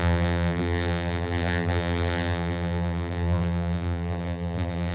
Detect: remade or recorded remade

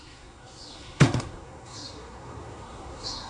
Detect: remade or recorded remade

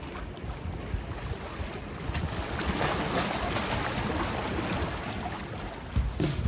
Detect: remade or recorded recorded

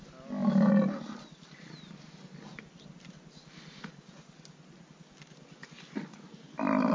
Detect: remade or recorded recorded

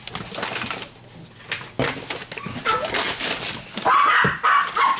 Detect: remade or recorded recorded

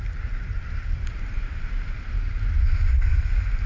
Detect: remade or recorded recorded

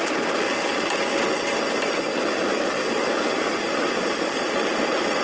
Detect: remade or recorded recorded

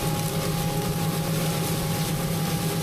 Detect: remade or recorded recorded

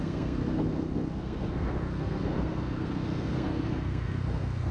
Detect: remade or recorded remade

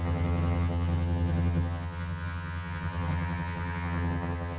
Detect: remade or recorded remade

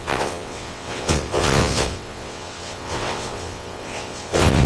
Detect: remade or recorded remade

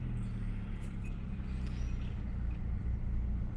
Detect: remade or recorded recorded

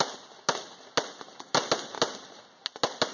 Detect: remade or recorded recorded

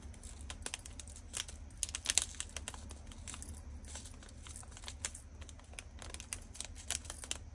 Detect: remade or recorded recorded